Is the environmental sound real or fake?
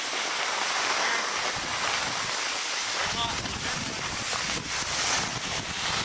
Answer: real